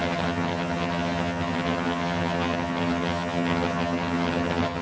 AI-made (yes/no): yes